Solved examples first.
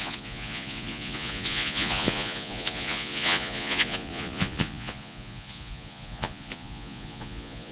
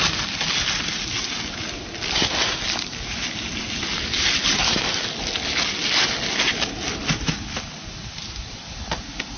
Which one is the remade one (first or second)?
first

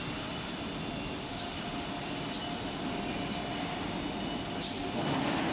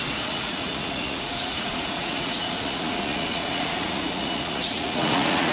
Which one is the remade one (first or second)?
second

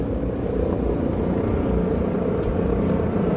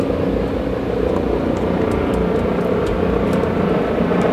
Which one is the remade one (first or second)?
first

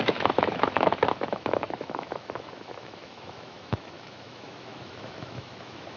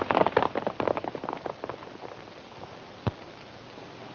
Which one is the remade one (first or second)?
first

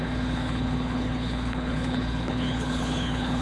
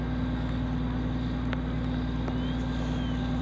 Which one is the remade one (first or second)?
first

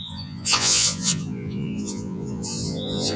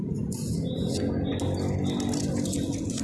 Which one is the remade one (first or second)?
first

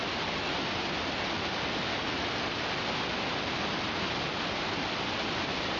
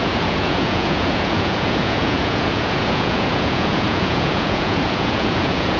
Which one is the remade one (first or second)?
second